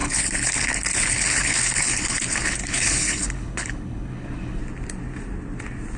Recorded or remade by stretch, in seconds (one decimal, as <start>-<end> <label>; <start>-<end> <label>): 0.0-4.6 remade; 4.6-6.0 recorded